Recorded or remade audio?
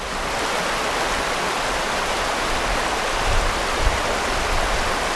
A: recorded